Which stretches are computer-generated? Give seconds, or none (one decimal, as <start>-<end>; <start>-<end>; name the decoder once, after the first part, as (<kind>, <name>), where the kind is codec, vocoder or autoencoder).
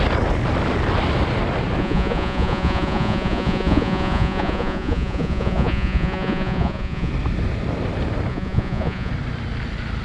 1.8-7.1 (vocoder, Vocos); 8.3-9.1